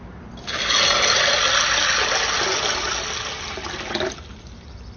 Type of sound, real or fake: real